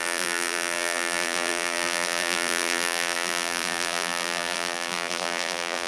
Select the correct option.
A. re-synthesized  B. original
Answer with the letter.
A